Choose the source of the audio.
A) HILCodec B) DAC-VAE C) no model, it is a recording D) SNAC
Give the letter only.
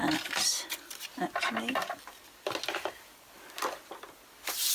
C